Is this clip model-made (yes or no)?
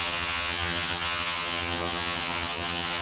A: yes